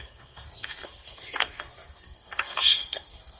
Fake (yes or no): yes